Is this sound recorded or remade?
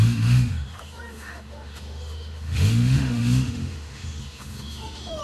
remade